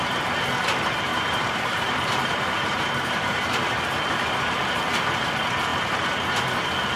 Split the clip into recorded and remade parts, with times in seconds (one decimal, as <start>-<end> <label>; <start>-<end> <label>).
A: 0.0-1.1 recorded; 1.1-5.3 remade; 5.3-7.0 recorded